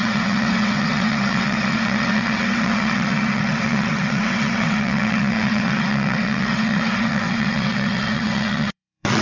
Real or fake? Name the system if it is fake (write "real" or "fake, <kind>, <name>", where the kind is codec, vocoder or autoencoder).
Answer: fake, vocoder, WaveNeXt